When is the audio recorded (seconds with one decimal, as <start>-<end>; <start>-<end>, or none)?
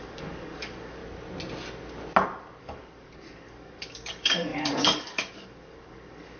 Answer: 1.0-2.6